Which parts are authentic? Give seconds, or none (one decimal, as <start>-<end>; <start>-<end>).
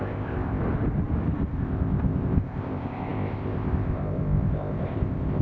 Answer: 0.6-1.5